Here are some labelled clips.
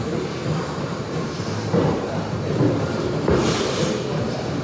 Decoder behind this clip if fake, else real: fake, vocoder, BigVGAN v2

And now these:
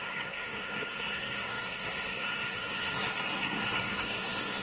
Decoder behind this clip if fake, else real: fake, codec, SNAC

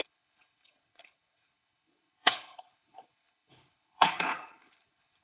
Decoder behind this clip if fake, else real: fake, codec, HILCodec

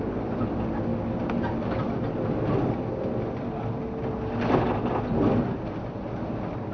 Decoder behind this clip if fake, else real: real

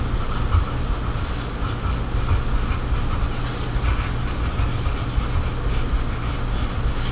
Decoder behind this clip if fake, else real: real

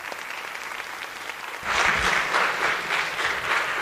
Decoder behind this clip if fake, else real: real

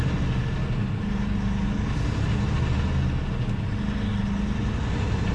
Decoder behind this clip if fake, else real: real